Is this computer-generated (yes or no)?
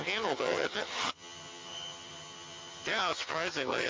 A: yes